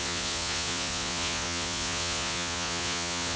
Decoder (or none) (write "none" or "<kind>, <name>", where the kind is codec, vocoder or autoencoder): vocoder, Vocos